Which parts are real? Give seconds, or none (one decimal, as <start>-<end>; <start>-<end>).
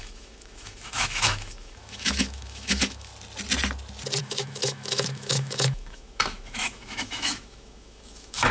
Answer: 3.1-4.2